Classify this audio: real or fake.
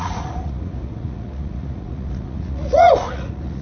fake